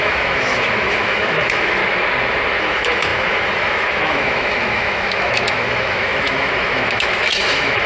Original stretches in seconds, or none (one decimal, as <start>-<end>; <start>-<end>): 1.8-2.6